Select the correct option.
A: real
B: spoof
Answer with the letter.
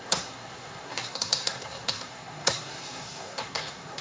B